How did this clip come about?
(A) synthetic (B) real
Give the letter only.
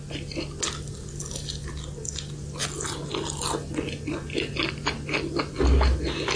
B